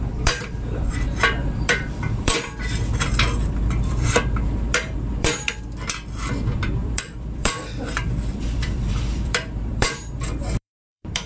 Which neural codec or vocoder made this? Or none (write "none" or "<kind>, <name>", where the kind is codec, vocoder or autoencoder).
vocoder, BigVGAN v2